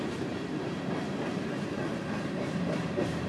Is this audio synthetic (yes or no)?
yes